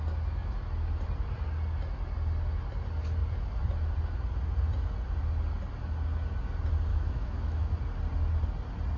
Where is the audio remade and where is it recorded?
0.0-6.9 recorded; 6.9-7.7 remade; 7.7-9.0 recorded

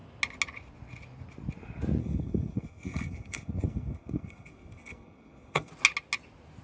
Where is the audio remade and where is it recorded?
0.0-2.0 recorded; 2.0-5.7 remade; 5.7-6.6 recorded

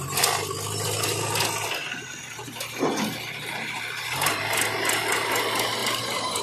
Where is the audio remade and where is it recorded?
0.0-5.8 recorded; 5.8-6.4 remade

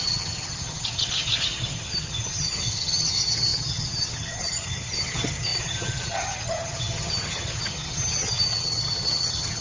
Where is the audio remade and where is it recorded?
0.0-9.6 remade

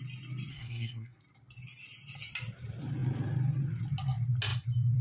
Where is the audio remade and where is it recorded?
0.0-0.5 recorded; 0.5-1.2 remade; 1.2-5.0 recorded

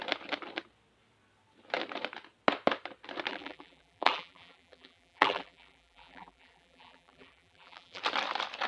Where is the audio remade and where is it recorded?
0.0-3.3 recorded; 3.3-8.0 remade; 8.0-8.7 recorded